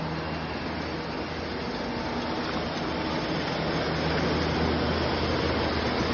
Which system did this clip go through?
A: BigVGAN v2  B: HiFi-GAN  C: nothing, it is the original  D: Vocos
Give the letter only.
C